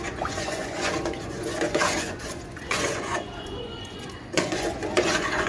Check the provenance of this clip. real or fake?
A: fake